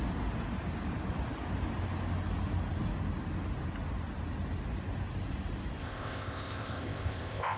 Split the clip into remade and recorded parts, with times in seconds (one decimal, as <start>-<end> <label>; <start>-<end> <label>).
0.0-5.8 recorded; 5.8-7.6 remade